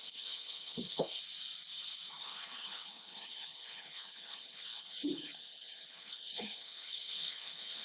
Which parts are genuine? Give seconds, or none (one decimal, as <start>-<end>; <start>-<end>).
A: 1.2-2.2